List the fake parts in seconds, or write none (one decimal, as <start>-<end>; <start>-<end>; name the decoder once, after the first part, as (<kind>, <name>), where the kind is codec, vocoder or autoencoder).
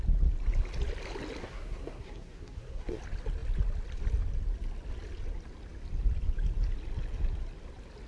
1.4-3.0 (codec, SNAC)